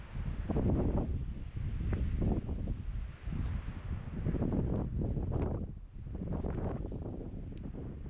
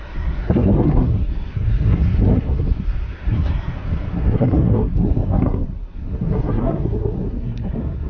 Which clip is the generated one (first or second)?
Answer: second